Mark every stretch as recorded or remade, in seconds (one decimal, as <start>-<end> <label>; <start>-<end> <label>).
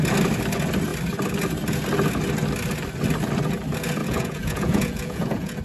0.0-4.0 recorded; 4.0-5.6 remade